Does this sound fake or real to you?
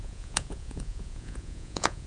fake